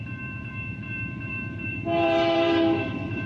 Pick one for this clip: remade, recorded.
remade